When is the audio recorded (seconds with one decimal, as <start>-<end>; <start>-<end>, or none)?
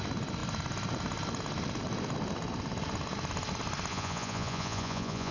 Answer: 0.0-3.9